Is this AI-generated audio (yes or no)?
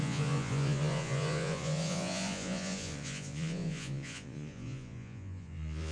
yes